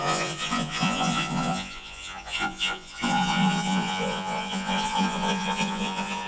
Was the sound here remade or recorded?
remade